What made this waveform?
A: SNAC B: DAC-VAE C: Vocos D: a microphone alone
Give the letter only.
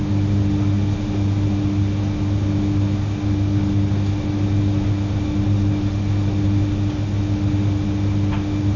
D